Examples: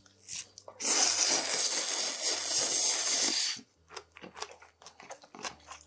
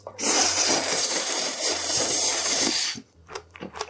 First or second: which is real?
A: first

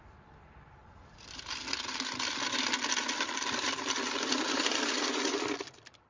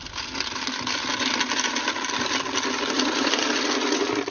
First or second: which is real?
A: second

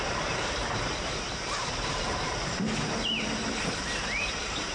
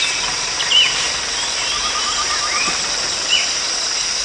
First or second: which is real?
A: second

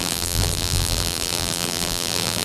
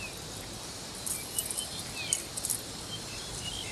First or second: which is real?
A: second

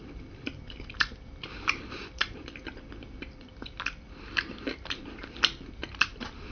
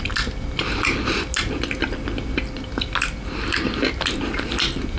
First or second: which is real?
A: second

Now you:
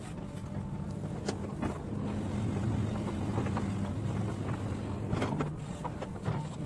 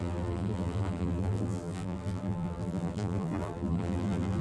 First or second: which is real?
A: first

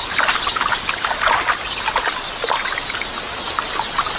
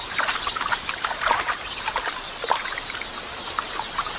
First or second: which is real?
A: first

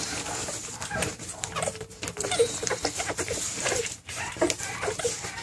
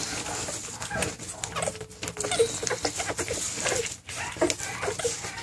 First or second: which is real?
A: second